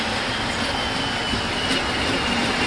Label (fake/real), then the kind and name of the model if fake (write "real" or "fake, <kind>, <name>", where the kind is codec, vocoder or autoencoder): real